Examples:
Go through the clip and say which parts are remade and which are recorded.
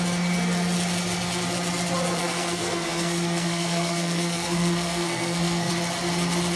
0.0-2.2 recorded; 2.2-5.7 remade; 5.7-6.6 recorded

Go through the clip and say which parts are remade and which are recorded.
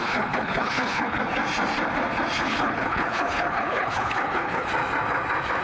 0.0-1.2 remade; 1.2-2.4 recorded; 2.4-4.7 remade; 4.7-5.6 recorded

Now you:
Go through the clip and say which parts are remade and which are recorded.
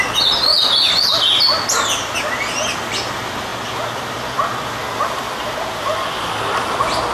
0.0-7.1 recorded